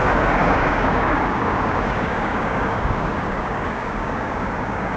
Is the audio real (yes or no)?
no